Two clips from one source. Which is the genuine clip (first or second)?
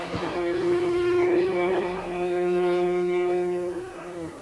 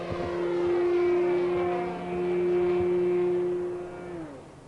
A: second